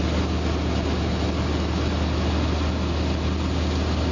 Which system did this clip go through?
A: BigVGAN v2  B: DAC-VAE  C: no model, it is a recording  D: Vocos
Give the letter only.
C